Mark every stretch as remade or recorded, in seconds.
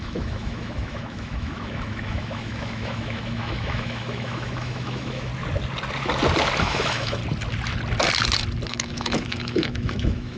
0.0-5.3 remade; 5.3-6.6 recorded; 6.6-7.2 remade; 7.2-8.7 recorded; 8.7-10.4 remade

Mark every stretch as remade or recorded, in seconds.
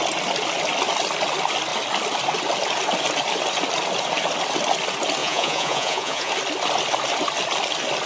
0.0-5.2 recorded; 5.2-6.3 remade; 6.3-8.1 recorded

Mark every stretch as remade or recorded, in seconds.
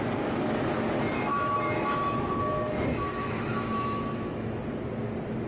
0.0-1.3 recorded; 1.3-4.6 remade; 4.6-5.5 recorded